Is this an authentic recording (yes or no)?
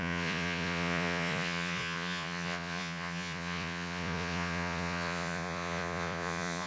no